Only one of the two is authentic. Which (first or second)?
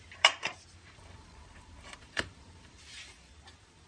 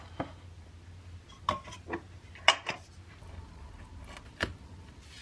second